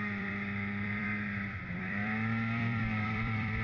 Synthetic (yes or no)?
yes